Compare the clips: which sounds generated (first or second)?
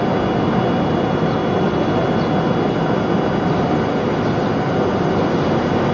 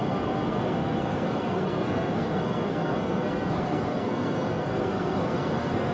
second